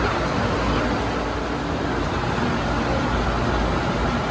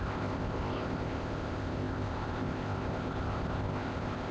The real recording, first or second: first